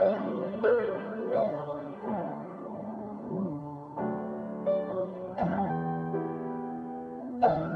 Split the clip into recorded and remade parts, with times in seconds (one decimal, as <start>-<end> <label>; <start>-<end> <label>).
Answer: 0.0-4.0 remade; 4.0-4.9 recorded; 4.9-5.7 remade; 5.7-7.2 recorded; 7.2-7.8 remade

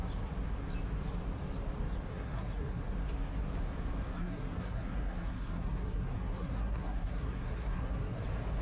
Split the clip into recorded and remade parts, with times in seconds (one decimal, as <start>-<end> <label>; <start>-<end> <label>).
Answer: 0.0-2.1 recorded; 2.1-2.8 remade; 2.8-4.1 recorded; 4.1-8.2 remade; 8.2-8.6 recorded

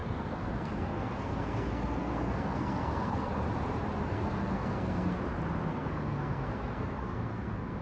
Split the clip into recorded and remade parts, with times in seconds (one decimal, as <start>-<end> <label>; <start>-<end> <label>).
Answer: 0.0-3.3 remade; 3.3-4.1 recorded; 4.1-5.2 remade; 5.2-5.7 recorded; 5.7-7.8 remade